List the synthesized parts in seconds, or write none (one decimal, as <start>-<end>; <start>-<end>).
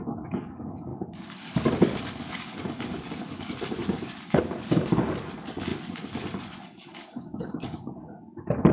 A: 0.0-8.7